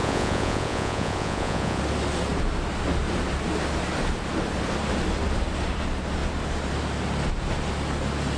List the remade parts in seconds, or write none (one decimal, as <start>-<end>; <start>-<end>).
0.0-1.8